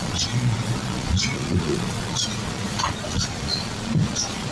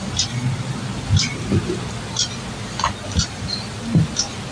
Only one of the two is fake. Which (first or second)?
first